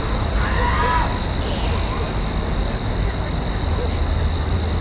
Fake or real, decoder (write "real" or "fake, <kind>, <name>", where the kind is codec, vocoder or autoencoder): real